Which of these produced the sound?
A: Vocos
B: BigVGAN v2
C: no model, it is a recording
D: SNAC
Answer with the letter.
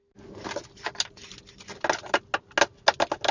C